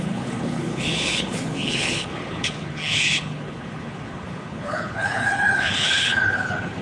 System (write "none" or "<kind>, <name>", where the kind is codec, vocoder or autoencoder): codec, HILCodec